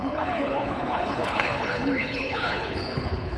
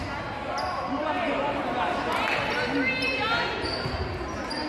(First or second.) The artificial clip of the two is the first